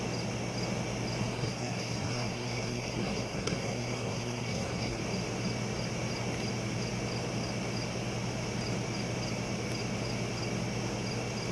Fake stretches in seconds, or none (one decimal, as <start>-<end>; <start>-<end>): 1.2-5.0